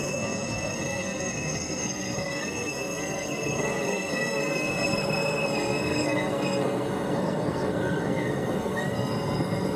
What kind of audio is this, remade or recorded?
remade